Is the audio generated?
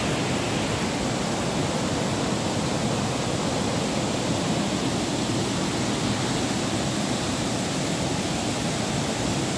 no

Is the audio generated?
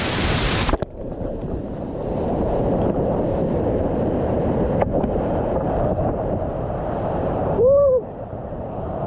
yes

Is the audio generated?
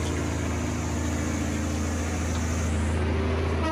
no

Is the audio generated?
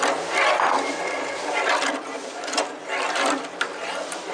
yes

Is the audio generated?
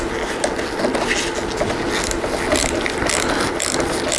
no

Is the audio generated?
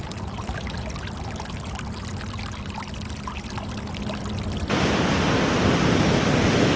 no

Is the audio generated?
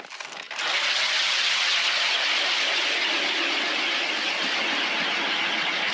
no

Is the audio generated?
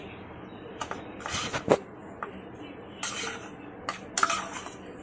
no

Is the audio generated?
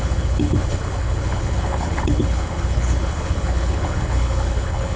yes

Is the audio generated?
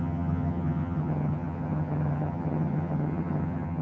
yes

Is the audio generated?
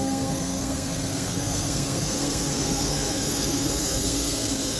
yes